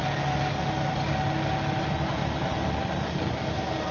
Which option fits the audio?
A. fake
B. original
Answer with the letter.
B